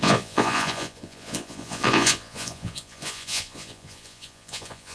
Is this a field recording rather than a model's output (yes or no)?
no